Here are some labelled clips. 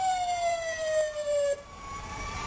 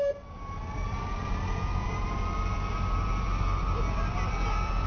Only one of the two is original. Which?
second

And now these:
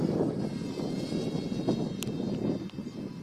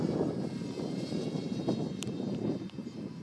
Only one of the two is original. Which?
first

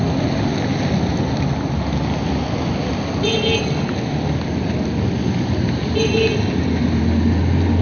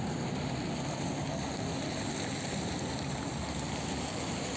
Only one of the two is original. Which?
first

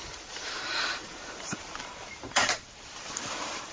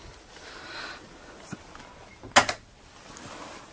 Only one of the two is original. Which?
second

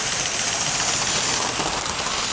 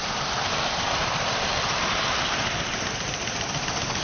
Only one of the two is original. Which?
first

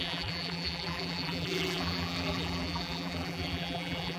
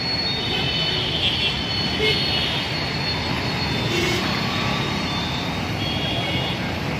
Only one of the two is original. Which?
second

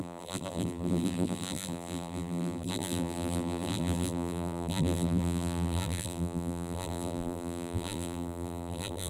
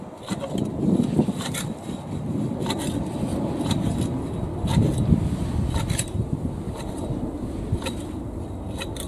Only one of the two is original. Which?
second